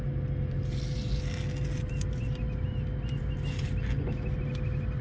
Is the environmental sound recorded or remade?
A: recorded